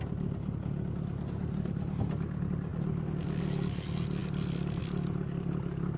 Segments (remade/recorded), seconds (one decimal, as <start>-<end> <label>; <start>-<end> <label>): 0.0-6.0 recorded